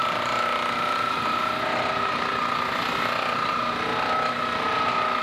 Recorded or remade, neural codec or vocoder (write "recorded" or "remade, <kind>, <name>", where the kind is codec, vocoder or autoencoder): recorded